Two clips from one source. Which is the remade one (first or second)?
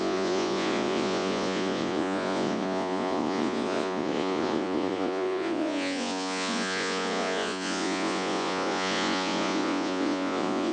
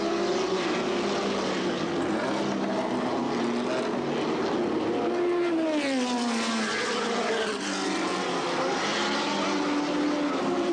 first